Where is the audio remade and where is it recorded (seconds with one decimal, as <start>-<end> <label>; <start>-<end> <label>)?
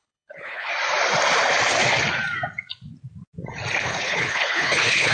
0.0-0.7 remade; 0.7-3.8 recorded; 3.8-5.1 remade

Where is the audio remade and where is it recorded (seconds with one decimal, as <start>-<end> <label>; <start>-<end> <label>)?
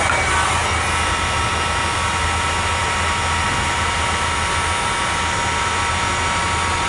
0.0-6.9 recorded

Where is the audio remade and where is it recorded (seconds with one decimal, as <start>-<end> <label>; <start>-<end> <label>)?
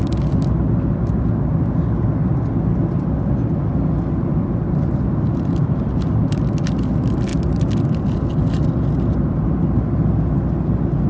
0.0-11.1 recorded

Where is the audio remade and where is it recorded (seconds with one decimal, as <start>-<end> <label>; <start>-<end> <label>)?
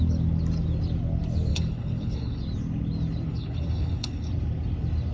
0.0-1.5 recorded; 1.5-2.4 remade; 2.4-3.3 recorded; 3.3-4.3 remade; 4.3-5.1 recorded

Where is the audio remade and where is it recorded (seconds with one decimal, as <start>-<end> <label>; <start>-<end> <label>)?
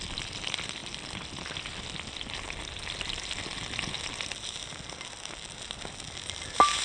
0.0-6.8 recorded